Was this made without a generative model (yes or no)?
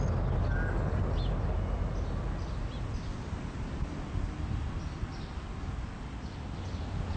yes